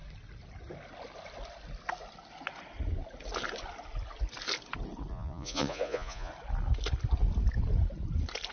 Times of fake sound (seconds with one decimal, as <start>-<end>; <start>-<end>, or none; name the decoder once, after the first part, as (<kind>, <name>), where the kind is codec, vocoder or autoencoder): 5.1-6.3 (vocoder, Vocos)